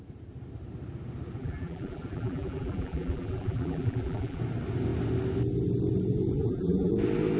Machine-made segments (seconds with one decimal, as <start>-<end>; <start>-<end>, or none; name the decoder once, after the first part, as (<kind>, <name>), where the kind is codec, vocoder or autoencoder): 1.4-4.4 (vocoder, BigVGAN v2); 6.4-6.9